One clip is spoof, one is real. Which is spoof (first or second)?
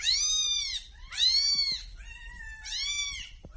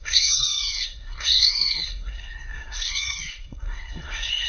second